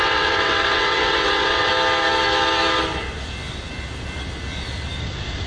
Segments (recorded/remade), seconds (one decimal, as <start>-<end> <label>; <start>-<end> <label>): 0.0-1.7 remade; 1.7-5.0 recorded; 5.0-5.5 remade